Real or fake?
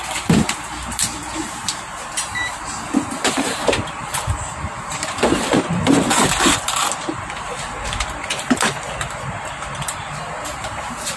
fake